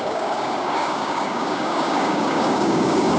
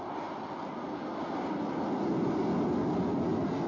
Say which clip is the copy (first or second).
first